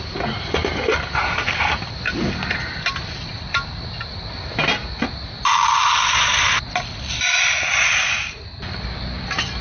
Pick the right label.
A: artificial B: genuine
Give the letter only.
B